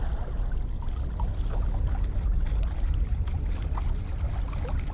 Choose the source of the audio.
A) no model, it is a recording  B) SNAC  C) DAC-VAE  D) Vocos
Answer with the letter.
A